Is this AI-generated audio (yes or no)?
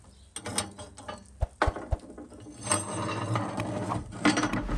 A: no